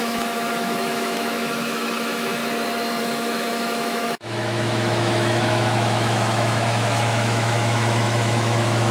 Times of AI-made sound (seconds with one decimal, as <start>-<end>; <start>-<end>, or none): 0.0-2.4; 3.0-8.9